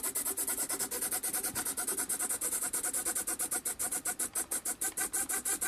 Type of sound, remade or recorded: recorded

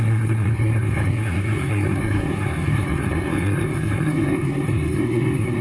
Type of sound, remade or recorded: remade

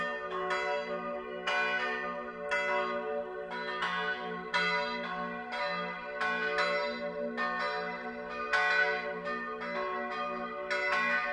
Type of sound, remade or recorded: recorded